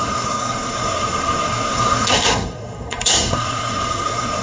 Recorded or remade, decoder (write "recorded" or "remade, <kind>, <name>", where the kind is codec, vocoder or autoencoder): remade, codec, SNAC